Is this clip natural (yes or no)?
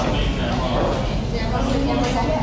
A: yes